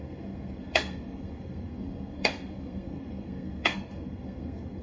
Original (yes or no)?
no